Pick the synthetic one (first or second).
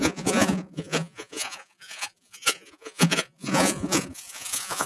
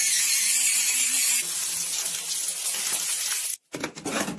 first